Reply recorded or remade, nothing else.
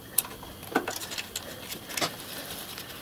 recorded